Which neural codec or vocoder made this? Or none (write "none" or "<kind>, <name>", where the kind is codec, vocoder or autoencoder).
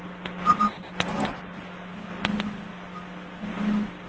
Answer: none